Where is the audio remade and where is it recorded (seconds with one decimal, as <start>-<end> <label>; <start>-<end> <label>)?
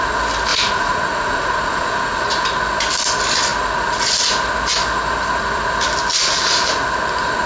0.0-0.5 recorded; 0.5-2.2 remade; 2.2-7.5 recorded